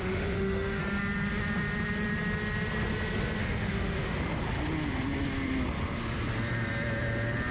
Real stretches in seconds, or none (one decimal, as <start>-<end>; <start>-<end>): 0.8-3.4; 4.4-7.5